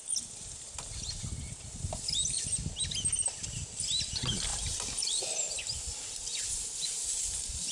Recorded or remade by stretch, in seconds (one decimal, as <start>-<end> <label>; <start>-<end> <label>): 0.0-7.7 recorded